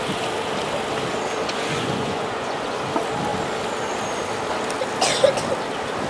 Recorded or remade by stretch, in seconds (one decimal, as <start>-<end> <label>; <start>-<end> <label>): 0.0-1.4 recorded; 1.4-2.8 remade; 2.8-6.1 recorded